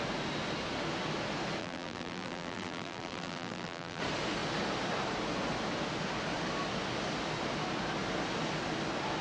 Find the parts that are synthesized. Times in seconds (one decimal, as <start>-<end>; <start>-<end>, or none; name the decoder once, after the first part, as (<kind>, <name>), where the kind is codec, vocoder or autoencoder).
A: 1.6-4.0 (vocoder, BigVGAN v2)